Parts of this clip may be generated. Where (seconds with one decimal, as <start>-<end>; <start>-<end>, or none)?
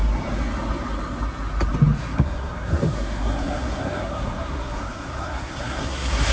2.0-6.3